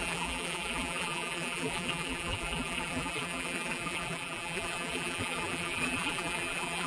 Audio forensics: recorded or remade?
remade